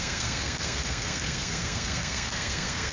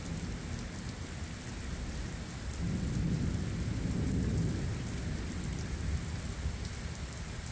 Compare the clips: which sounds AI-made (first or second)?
first